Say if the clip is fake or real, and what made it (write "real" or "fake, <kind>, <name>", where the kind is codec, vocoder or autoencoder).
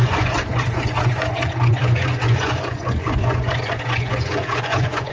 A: fake, vocoder, Vocos